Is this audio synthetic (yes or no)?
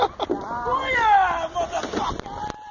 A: no